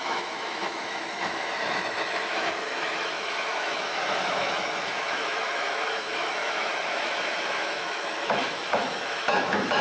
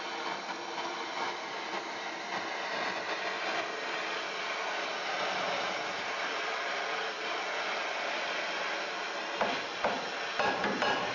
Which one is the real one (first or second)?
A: second